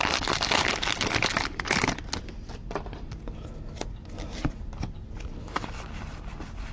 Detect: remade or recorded recorded